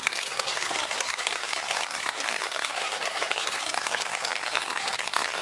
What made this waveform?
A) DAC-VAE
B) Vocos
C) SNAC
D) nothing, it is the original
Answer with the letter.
C